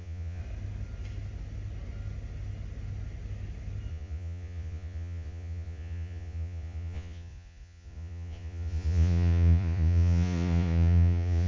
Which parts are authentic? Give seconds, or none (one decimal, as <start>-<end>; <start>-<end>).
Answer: 0.4-3.9